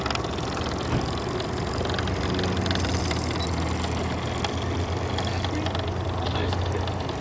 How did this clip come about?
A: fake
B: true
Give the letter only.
B